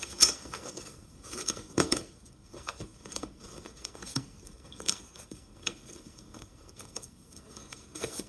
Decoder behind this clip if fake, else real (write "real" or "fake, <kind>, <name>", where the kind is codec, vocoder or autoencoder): fake, codec, SNAC